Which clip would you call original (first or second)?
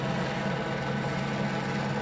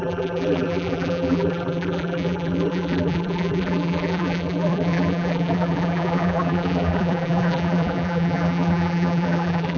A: first